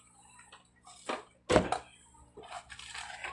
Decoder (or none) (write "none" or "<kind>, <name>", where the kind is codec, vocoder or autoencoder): none